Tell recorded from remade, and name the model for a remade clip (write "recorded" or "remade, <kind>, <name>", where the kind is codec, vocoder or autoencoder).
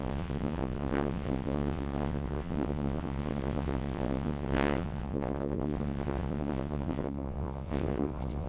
remade, vocoder, WaveNeXt